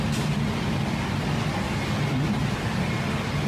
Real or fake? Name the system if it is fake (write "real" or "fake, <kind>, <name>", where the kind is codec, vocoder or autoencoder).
real